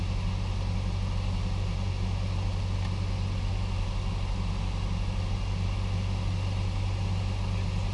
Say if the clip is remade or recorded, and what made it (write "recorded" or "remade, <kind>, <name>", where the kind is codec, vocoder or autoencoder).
recorded